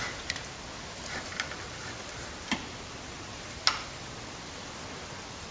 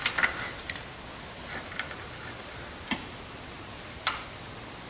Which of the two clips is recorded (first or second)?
second